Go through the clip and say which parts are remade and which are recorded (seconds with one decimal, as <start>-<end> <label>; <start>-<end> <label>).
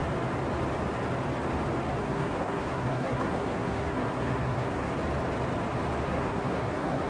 0.0-2.0 recorded; 2.0-4.9 remade; 4.9-6.0 recorded; 6.0-7.1 remade